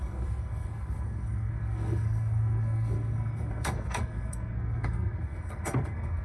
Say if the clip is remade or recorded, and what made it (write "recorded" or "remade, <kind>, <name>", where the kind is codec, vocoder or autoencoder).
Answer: remade, codec, SNAC